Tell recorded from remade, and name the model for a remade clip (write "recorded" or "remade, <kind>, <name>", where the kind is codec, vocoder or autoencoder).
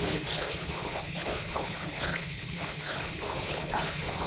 remade, codec, HILCodec